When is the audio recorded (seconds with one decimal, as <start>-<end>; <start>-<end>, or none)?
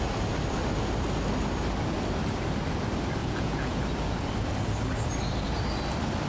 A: 0.0-3.2; 3.8-6.3